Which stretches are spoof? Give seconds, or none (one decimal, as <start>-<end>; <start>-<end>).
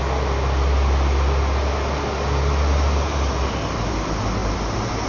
none